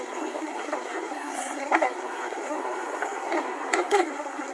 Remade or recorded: remade